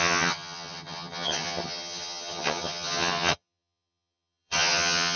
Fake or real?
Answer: fake